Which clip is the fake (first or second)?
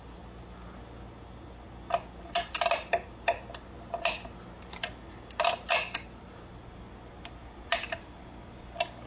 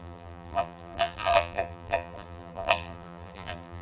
second